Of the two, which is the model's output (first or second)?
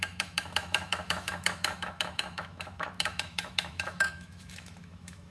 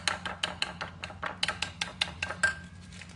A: first